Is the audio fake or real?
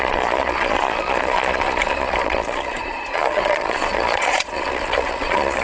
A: fake